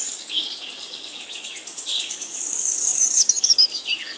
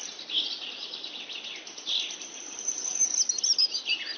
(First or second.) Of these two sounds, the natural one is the second